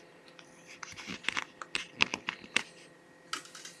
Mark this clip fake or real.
real